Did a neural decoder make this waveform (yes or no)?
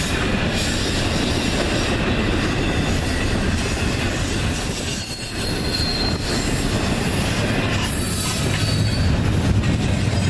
no